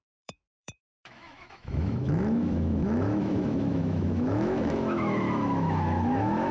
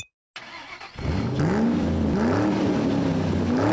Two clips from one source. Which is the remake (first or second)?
first